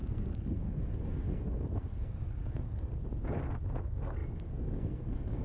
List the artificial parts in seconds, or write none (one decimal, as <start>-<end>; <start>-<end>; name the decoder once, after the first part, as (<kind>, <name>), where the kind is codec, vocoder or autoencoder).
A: 0.0-2.9 (codec, SNAC); 3.8-5.4